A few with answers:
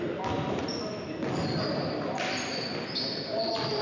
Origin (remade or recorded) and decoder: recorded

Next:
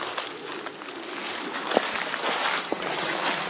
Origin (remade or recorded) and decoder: recorded